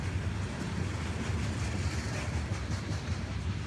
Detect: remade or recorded recorded